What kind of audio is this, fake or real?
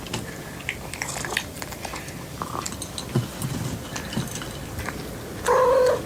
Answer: real